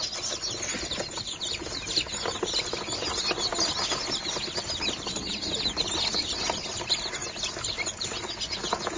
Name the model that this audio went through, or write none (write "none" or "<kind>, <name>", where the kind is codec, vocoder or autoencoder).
none